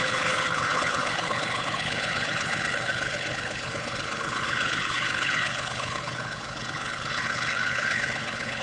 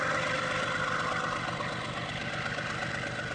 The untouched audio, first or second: second